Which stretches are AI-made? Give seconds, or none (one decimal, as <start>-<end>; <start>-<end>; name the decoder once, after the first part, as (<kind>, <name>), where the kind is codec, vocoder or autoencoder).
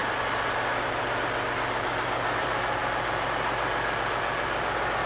none